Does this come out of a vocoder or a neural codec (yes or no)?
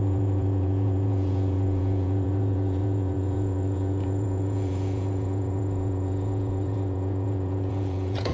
yes